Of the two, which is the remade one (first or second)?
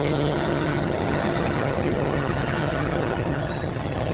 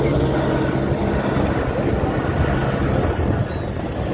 first